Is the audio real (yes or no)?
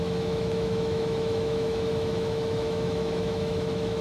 no